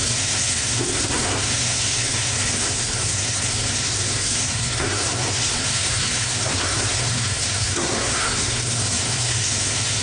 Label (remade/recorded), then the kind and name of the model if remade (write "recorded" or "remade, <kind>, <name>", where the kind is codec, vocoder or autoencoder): remade, codec, SNAC